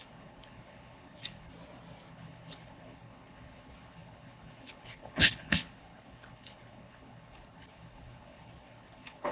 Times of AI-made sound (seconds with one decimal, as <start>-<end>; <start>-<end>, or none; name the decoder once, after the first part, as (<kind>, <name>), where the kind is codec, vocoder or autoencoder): 0.0-1.5 (codec, HILCodec); 2.1-9.3